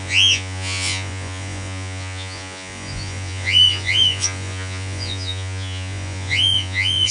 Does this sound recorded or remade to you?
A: remade